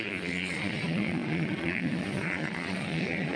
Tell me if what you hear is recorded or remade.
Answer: remade